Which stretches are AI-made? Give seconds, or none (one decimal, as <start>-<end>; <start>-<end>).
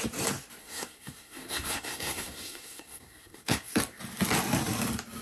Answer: 0.6-3.7